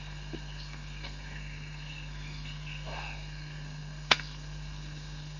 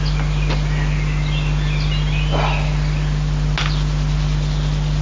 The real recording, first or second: second